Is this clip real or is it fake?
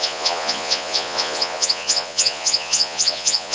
fake